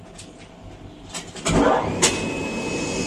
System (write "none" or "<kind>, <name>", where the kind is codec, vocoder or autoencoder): none